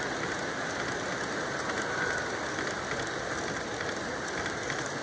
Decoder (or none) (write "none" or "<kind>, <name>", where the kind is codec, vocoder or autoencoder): none